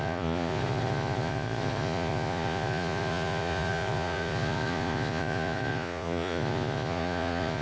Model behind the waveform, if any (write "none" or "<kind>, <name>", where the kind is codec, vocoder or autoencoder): vocoder, Vocos